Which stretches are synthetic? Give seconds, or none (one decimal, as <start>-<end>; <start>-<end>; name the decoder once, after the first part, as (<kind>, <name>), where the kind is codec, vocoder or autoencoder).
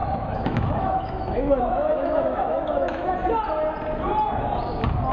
0.0-3.1 (autoencoder, DAC-VAE)